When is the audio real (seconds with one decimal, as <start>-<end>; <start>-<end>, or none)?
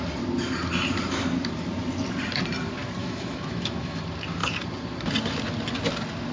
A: 0.0-3.0; 4.0-6.3